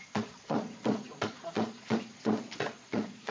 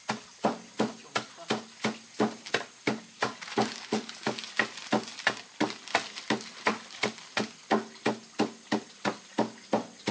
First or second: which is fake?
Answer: first